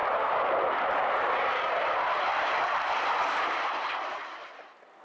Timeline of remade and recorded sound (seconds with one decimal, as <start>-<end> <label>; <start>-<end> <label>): 0.0-5.0 recorded